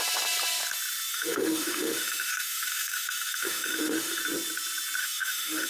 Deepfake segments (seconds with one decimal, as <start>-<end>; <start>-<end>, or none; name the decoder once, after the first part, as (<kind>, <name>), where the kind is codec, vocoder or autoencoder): 1.1-4.2 (autoencoder, DAC-VAE); 5.0-5.7